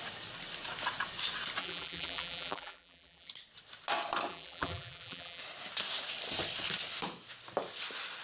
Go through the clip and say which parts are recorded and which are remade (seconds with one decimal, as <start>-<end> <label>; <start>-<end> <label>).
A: 0.0-1.6 recorded; 1.6-3.3 remade; 3.3-4.3 recorded; 4.3-5.4 remade; 5.4-8.2 recorded